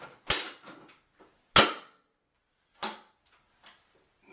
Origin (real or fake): real